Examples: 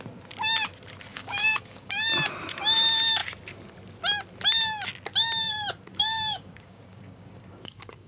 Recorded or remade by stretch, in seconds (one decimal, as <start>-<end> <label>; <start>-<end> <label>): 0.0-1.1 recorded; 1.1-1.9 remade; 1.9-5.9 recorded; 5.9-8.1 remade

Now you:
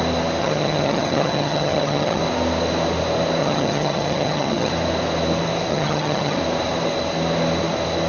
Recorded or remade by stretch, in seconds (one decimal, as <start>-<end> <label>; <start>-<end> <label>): 0.0-0.4 recorded; 0.4-2.2 remade; 2.2-3.4 recorded; 3.4-4.7 remade; 4.7-5.7 recorded; 5.7-6.4 remade; 6.4-8.1 recorded

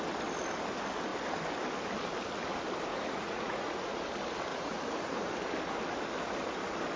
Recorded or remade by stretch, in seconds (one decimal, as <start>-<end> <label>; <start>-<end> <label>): 0.0-2.9 recorded; 2.9-4.0 remade; 4.0-4.5 recorded; 4.5-5.3 remade; 5.3-7.0 recorded

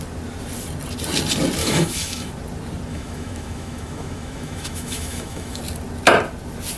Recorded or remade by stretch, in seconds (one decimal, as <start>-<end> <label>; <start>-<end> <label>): 0.0-1.6 recorded; 1.6-2.3 remade; 2.3-2.9 recorded; 2.9-5.6 remade; 5.6-6.8 recorded